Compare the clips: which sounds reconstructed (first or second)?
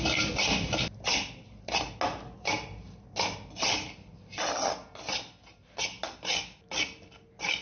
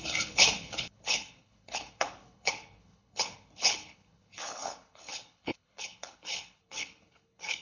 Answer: second